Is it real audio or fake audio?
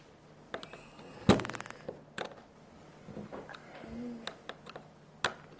real